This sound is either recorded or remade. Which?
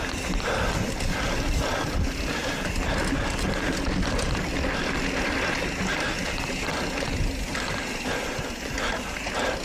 recorded